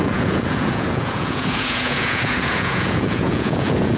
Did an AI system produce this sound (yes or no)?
yes